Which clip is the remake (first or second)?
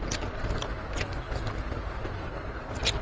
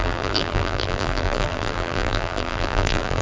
second